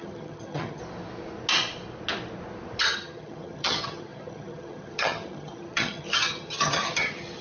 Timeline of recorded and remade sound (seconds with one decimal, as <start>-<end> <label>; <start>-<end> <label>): 0.0-0.8 remade; 0.8-2.8 recorded; 2.8-7.4 remade